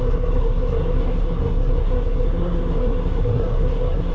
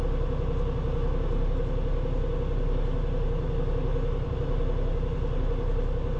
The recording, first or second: second